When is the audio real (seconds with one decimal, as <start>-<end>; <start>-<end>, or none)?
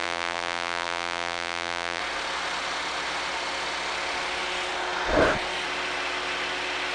2.0-6.9